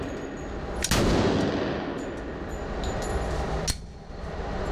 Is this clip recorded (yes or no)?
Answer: yes